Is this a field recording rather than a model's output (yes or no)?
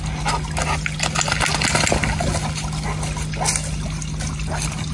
yes